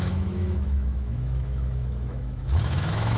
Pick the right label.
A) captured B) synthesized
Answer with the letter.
B